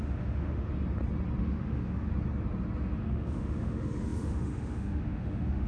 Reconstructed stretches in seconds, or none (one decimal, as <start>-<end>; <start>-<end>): 0.0-0.7; 1.4-2.1; 3.0-5.7